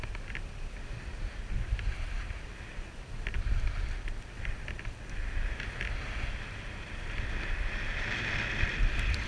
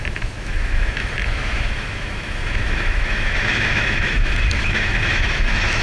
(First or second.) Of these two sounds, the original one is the first